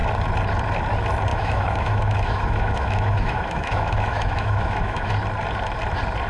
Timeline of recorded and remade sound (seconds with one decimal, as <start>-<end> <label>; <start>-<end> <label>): 0.0-1.3 recorded; 1.3-5.1 remade; 5.1-6.3 recorded